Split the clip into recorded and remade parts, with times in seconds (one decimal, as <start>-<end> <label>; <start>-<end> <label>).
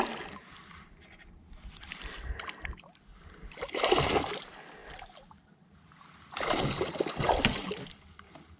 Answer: 0.0-8.6 recorded